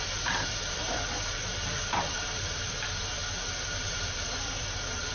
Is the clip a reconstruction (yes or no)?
yes